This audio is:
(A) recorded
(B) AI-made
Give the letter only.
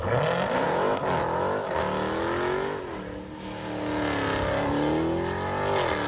A